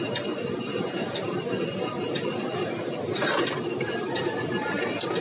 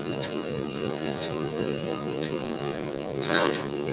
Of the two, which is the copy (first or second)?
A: second